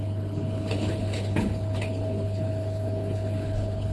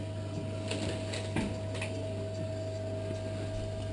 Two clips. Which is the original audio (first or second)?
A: second